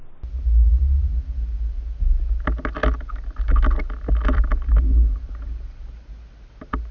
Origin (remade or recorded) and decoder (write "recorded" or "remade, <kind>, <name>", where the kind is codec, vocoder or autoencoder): recorded